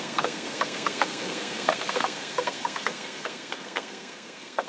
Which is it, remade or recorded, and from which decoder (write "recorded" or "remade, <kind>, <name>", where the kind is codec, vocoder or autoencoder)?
remade, codec, SNAC